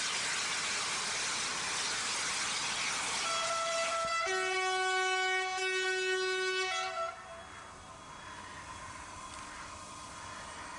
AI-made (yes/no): no